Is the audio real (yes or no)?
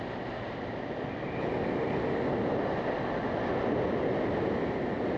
yes